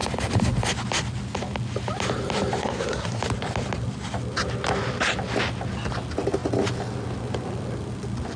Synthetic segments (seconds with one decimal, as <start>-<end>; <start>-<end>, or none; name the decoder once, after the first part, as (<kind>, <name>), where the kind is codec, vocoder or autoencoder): 2.6-3.2 (codec, SNAC)